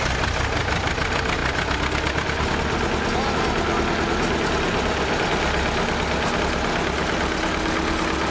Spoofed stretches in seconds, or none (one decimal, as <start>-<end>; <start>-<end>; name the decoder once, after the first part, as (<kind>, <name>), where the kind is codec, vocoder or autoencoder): none